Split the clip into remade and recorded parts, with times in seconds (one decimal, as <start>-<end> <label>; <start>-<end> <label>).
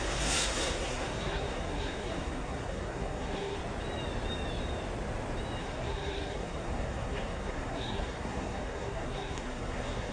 0.0-3.6 remade; 3.6-5.6 recorded; 5.6-10.1 remade